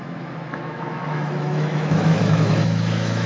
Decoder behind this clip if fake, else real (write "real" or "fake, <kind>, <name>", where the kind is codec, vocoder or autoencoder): fake, autoencoder, DAC-VAE